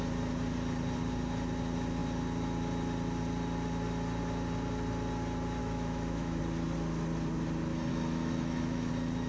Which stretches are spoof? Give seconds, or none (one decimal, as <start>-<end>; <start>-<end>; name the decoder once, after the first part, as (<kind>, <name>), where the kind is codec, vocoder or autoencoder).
5.6-6.4 (autoencoder, DAC-VAE); 7.9-8.9